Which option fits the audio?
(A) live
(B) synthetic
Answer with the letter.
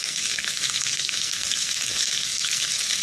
B